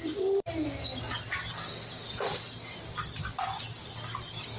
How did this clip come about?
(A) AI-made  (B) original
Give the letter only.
B